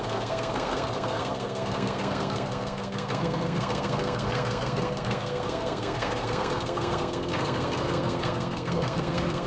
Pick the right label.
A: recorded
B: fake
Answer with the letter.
B